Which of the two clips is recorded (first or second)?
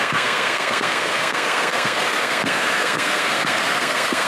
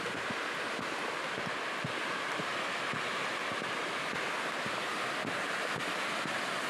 second